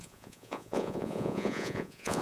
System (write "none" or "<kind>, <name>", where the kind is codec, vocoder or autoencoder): vocoder, Vocos